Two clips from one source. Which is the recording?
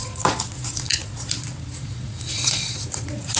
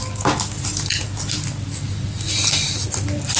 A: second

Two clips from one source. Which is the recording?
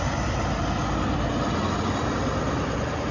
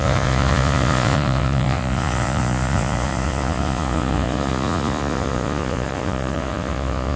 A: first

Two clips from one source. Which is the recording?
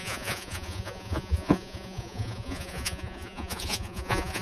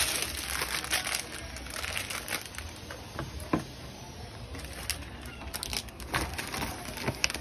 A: second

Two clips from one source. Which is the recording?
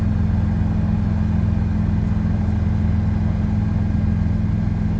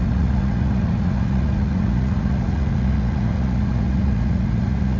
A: first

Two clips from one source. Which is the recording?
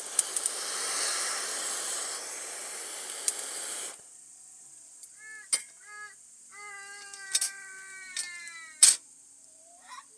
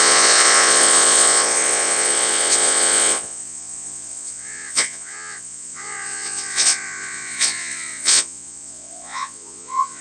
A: first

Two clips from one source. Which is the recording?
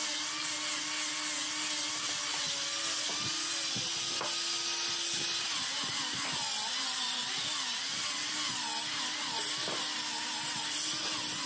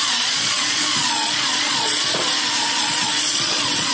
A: first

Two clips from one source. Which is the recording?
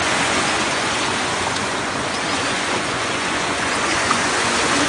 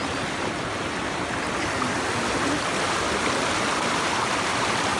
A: second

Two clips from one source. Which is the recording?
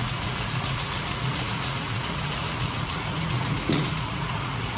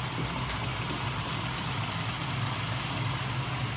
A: second